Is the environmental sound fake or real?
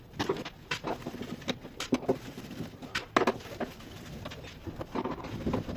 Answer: real